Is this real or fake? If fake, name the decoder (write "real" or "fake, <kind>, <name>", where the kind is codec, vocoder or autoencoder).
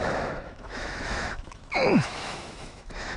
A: fake, autoencoder, DAC-VAE